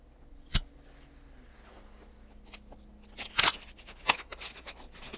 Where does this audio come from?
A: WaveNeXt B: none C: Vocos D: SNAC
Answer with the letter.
B